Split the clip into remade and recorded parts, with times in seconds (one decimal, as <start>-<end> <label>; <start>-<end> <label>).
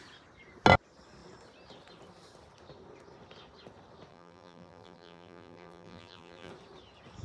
0.0-4.1 recorded; 4.1-6.5 remade; 6.5-7.2 recorded